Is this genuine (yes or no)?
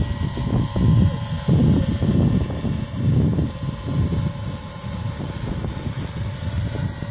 yes